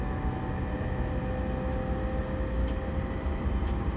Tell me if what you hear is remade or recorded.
recorded